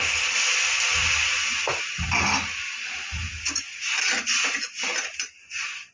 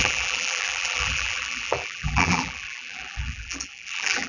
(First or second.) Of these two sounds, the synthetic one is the second